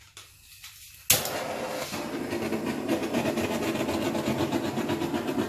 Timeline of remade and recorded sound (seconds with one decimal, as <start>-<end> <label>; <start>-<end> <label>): 0.0-5.5 recorded